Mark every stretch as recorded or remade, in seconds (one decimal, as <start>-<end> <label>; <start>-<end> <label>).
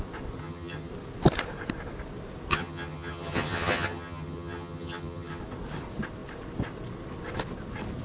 0.0-0.4 recorded; 0.4-0.9 remade; 0.9-2.5 recorded; 2.5-5.4 remade; 5.4-8.0 recorded